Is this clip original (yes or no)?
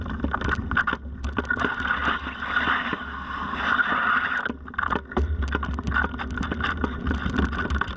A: yes